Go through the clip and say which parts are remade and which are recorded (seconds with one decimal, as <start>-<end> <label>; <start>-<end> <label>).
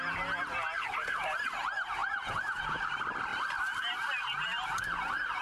0.0-2.0 recorded; 2.0-2.8 remade; 2.8-5.4 recorded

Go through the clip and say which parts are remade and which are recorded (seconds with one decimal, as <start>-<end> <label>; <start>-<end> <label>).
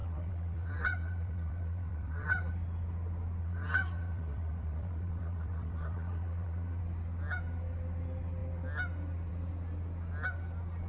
0.0-2.5 remade; 2.5-3.4 recorded; 3.4-6.8 remade; 6.8-10.9 recorded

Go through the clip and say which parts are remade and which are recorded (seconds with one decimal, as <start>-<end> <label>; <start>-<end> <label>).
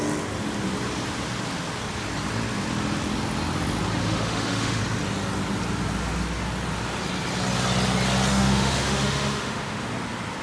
0.0-4.0 recorded; 4.0-4.8 remade; 4.8-8.3 recorded; 8.3-9.9 remade; 9.9-10.4 recorded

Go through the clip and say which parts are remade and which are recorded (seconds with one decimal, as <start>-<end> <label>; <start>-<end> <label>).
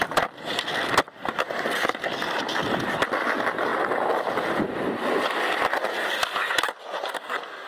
0.0-7.7 recorded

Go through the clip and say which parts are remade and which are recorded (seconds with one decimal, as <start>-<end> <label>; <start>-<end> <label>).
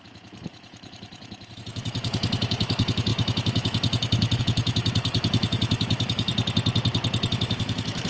0.0-6.3 remade; 6.3-7.3 recorded; 7.3-8.1 remade